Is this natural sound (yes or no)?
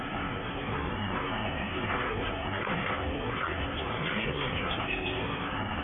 no